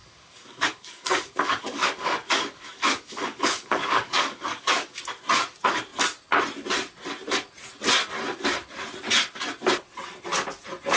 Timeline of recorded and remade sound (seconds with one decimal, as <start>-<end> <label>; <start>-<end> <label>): 0.0-5.0 remade; 5.0-11.0 recorded